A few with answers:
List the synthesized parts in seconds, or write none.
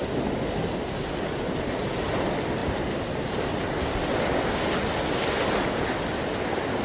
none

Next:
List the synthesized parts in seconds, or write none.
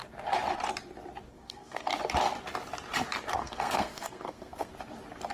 1.3-1.9 (codec, SNAC); 3.4-4.7